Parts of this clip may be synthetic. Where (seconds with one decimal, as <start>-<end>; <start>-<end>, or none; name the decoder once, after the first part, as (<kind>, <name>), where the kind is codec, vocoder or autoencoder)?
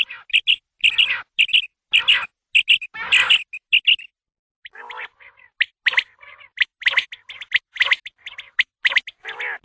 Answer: none